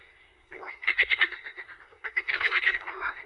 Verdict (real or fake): fake